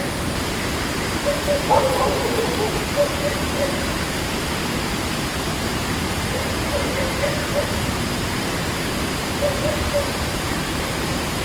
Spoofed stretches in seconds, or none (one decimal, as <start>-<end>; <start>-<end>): 0.0-7.5; 9.1-11.4